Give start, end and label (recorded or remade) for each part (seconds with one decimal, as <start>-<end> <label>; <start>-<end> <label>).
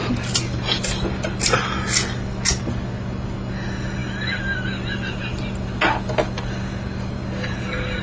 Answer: 0.0-8.0 recorded